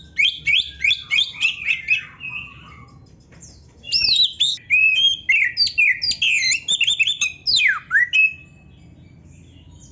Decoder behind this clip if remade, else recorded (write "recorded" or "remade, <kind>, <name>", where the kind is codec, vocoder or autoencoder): recorded